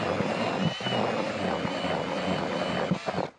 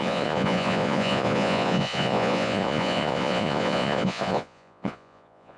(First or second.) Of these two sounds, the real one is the first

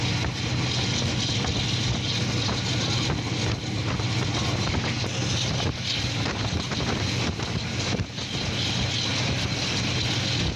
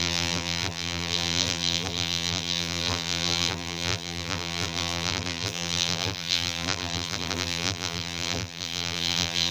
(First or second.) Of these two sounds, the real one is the first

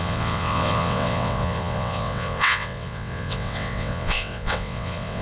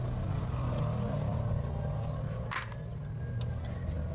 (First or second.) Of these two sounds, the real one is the second